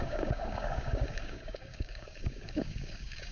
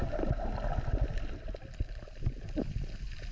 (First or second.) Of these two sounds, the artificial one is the first